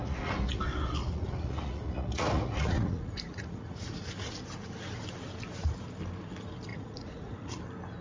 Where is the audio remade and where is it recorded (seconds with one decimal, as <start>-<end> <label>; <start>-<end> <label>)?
0.0-0.6 remade; 0.6-1.0 recorded; 1.0-4.3 remade; 4.3-6.7 recorded; 6.7-7.6 remade; 7.6-8.0 recorded